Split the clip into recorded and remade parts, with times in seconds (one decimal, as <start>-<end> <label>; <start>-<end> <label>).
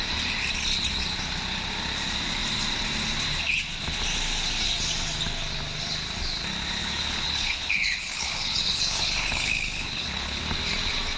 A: 0.0-6.8 recorded; 6.8-10.4 remade; 10.4-11.2 recorded